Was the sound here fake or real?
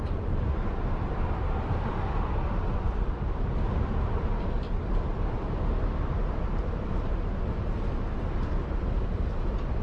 fake